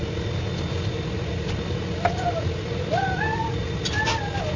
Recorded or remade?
recorded